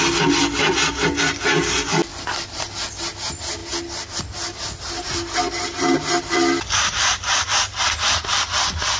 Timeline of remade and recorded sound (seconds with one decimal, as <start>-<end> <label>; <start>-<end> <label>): 0.0-9.0 recorded